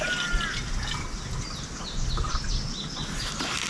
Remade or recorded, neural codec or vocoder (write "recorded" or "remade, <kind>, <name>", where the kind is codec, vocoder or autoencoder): recorded